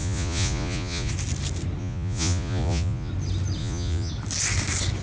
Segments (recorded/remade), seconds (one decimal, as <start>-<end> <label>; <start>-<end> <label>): 0.0-1.1 remade; 1.1-1.8 recorded; 1.8-3.1 remade; 3.1-3.6 recorded; 3.6-4.1 remade; 4.1-5.0 recorded